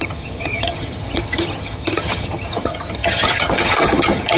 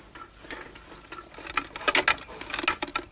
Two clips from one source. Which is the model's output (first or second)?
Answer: first